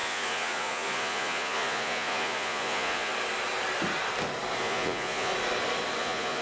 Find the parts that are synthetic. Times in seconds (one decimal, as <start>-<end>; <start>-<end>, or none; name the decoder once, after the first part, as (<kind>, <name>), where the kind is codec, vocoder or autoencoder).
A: 0.0-3.1 (vocoder, Vocos); 4.6-5.3; 6.0-6.4